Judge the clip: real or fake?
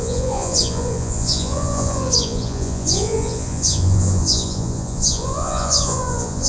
fake